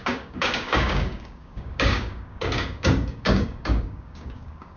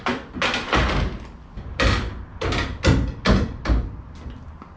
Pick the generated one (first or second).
first